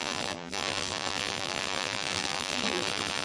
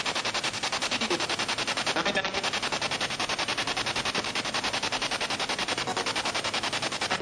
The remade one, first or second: first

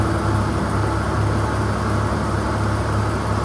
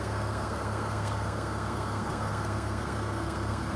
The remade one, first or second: second